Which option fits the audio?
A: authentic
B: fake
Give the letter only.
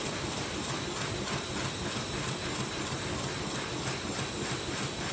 A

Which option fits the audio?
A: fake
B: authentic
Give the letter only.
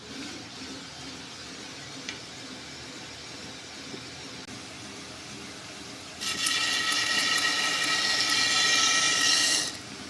B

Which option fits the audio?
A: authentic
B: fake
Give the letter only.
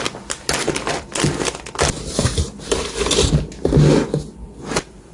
A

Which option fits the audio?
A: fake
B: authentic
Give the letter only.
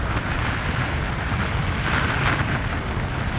B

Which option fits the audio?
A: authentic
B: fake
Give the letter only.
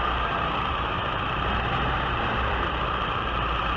B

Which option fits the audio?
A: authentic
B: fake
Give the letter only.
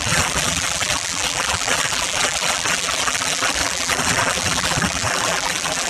B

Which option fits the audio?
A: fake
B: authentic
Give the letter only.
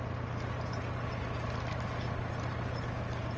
B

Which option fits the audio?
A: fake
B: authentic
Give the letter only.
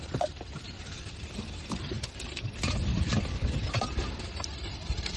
A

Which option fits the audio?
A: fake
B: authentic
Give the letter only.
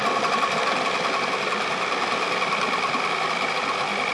B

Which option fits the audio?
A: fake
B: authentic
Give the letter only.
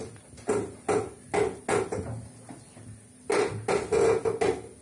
B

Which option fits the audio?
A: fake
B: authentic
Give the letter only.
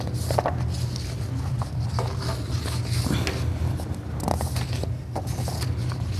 B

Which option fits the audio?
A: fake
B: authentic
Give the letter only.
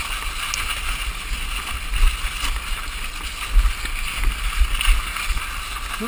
B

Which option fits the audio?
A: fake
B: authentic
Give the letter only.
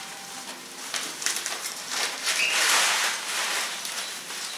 A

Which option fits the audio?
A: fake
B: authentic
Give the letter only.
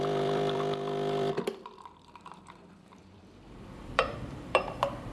A